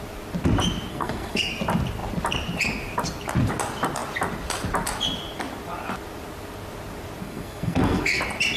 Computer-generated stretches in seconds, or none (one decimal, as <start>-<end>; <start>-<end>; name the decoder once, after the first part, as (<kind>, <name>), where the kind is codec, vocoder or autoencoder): 0.9-1.5 (codec, SNAC); 7.2-8.2